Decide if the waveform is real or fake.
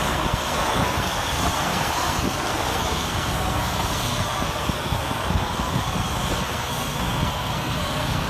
fake